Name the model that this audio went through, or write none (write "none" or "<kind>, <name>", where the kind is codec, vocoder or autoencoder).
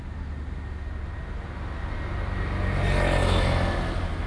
none